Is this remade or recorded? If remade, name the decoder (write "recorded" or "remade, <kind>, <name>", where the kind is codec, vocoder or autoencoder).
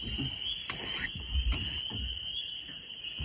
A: recorded